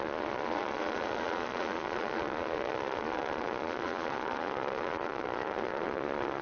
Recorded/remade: remade